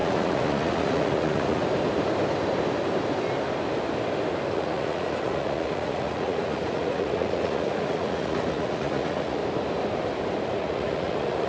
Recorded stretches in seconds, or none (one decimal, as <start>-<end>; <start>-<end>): 1.6-4.5; 9.4-10.6